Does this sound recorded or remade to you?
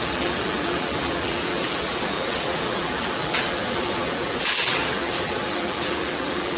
remade